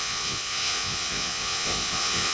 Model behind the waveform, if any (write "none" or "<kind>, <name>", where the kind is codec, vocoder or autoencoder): vocoder, Vocos